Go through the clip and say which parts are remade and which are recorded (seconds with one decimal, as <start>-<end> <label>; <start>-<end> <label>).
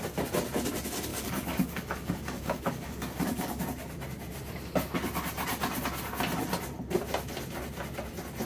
0.0-1.1 recorded; 1.1-3.6 remade; 3.6-8.5 recorded